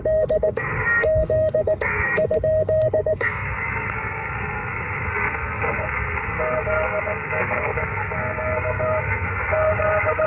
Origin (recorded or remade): remade